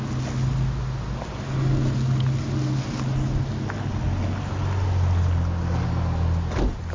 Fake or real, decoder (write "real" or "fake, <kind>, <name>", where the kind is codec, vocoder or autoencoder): real